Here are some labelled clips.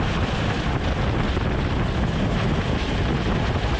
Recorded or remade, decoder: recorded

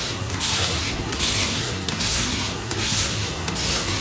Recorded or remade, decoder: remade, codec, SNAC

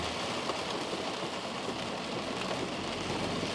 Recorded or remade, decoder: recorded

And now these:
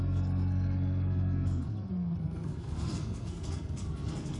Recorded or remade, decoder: remade, codec, SNAC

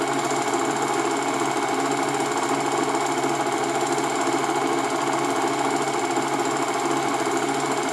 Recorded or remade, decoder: recorded